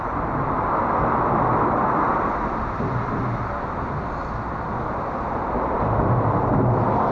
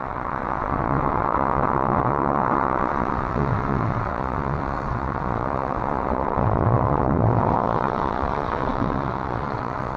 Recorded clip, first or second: first